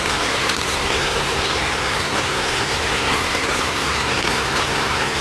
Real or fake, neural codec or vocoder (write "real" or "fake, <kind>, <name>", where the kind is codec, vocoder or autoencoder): fake, codec, SNAC